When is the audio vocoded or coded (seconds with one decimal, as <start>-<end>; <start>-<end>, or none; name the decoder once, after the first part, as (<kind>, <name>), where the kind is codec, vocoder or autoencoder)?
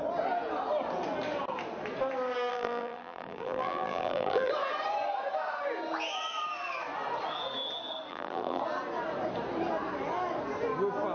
2.5-4.5 (vocoder, BigVGAN v2); 8.1-8.6